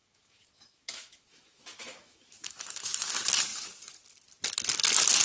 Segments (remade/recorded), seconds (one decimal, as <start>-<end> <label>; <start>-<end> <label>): 0.0-3.1 remade; 3.1-5.2 recorded